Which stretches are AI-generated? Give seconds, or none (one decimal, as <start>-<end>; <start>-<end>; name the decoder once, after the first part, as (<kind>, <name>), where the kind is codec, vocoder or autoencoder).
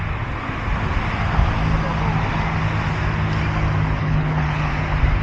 4.0-4.7 (codec, HILCodec)